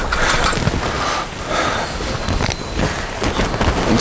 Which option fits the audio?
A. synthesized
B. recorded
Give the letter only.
B